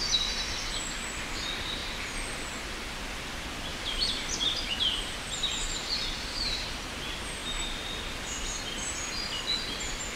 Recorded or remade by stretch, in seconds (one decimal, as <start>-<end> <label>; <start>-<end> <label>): 0.0-3.7 recorded; 3.7-5.3 remade; 5.3-10.2 recorded